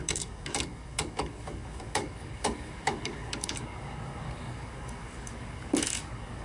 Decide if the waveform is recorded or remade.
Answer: remade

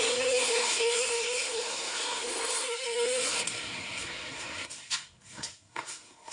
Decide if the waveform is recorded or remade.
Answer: remade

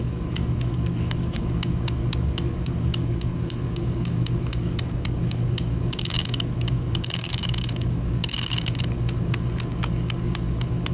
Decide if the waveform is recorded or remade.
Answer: remade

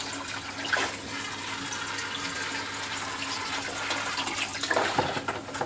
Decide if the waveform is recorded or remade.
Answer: recorded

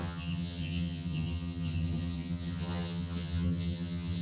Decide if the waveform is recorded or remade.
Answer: remade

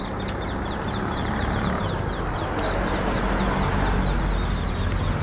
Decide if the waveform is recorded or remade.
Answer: recorded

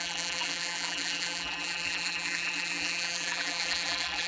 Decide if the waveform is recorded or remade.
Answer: remade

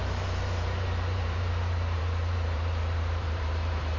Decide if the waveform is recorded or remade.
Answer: remade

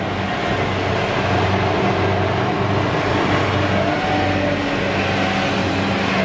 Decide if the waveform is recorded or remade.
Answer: recorded